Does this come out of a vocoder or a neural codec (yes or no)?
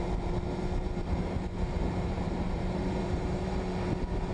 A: yes